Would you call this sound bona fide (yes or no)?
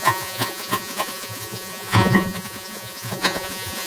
no